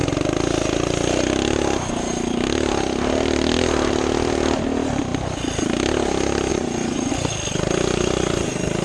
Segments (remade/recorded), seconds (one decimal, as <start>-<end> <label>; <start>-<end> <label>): 0.0-6.5 recorded; 6.5-7.1 remade; 7.1-8.8 recorded

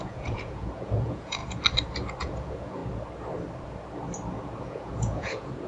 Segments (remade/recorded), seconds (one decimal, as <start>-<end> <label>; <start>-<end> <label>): 0.0-1.4 remade; 1.4-2.2 recorded; 2.2-2.8 remade; 2.8-4.6 recorded; 4.6-5.7 remade

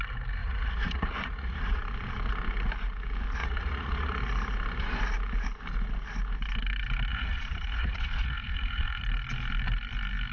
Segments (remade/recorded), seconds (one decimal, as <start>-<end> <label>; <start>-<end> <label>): 0.0-0.4 recorded; 0.4-1.8 remade; 1.8-3.4 recorded; 3.4-4.2 remade; 4.2-7.1 recorded; 7.1-9.0 remade; 9.0-10.3 recorded

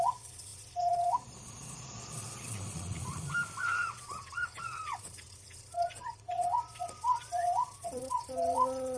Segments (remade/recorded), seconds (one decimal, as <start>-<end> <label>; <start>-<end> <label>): 0.0-3.0 remade; 3.0-3.8 recorded; 3.8-9.0 remade

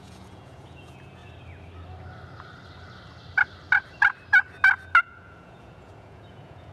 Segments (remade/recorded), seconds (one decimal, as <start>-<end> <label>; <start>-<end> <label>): 0.0-1.2 remade; 1.2-5.0 recorded; 5.0-6.7 remade

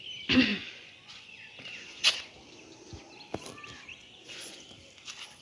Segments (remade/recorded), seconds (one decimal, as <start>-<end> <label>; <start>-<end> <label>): 0.0-0.5 recorded; 0.5-2.3 remade; 2.3-3.9 recorded; 3.9-4.6 remade; 4.6-5.4 recorded

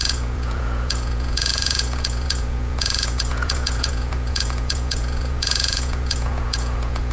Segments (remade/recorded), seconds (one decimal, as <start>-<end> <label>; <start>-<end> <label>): 0.0-7.1 remade

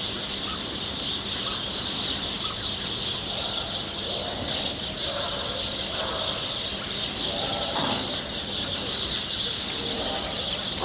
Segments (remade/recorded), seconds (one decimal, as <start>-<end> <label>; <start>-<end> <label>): 0.0-10.8 recorded